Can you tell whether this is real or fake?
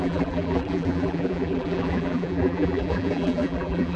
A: fake